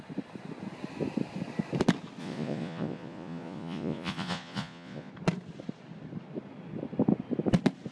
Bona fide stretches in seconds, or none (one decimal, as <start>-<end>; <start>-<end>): 0.0-2.2; 5.1-7.9